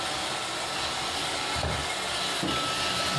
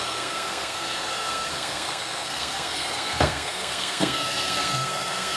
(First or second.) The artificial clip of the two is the second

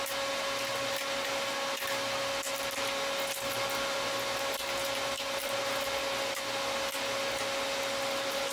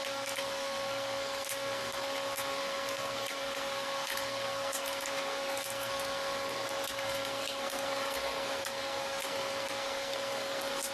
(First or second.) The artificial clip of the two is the second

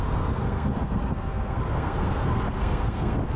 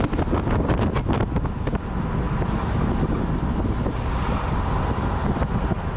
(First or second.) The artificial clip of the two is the first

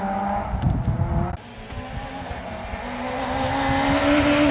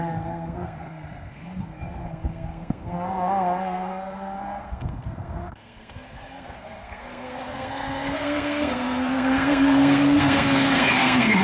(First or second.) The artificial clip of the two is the second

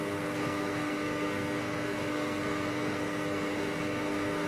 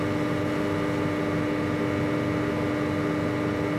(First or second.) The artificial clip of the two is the first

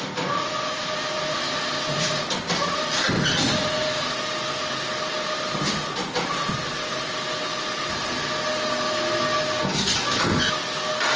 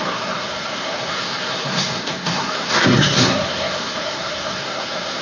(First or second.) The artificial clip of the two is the second